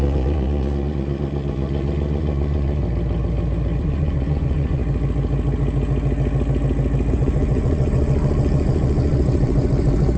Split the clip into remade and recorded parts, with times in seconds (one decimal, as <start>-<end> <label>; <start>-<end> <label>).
0.0-2.8 remade; 2.8-3.8 recorded; 3.8-4.8 remade; 4.8-7.1 recorded; 7.1-10.2 remade

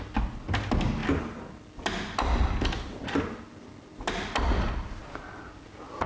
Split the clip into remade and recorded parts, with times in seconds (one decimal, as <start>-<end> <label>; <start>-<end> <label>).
0.0-6.1 recorded

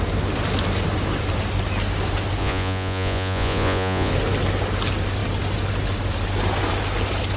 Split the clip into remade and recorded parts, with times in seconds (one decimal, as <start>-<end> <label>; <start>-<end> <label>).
0.0-2.4 recorded; 2.4-4.1 remade; 4.1-7.4 recorded

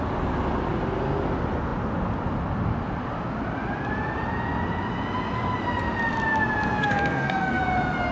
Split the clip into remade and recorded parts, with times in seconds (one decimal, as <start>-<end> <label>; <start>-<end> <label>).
0.0-6.8 recorded; 6.8-7.6 remade; 7.6-8.1 recorded